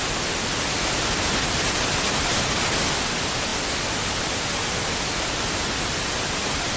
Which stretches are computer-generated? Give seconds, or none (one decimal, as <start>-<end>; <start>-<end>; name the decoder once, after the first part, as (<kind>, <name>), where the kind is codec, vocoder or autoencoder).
none